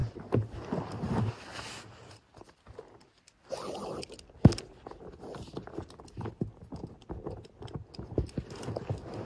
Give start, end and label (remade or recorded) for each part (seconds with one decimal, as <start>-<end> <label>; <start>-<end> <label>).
0.0-9.3 recorded